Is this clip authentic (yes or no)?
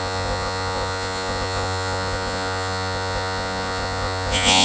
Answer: no